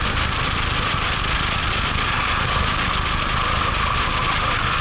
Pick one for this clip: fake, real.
real